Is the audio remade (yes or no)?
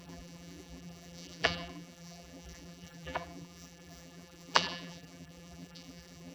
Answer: yes